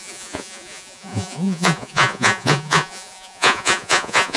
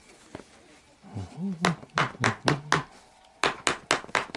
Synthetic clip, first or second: first